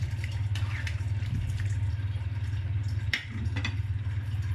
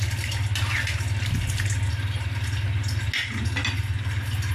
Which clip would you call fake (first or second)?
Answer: first